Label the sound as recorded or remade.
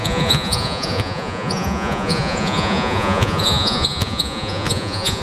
remade